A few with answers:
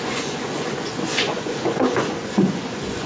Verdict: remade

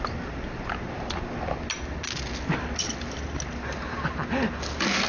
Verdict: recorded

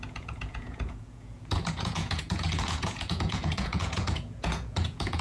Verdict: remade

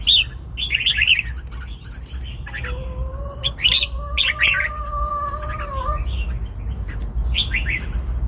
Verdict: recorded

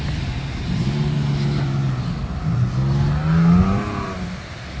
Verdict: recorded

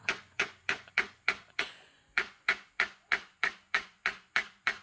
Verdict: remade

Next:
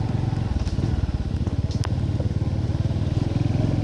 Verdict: recorded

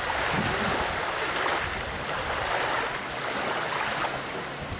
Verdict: recorded